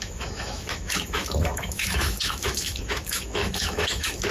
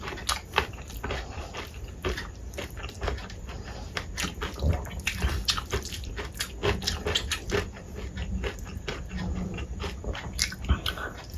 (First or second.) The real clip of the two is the second